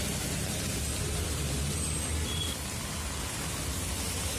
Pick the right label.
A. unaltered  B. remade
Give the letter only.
A